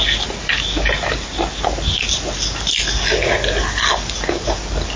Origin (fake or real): real